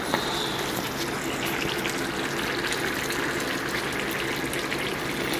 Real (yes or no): yes